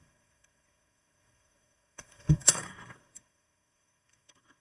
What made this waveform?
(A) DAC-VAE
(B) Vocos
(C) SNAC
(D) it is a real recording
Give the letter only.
C